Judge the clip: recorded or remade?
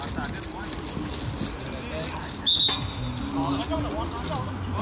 recorded